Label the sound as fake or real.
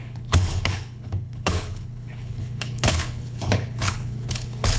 fake